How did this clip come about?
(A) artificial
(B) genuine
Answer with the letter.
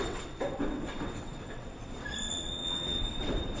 A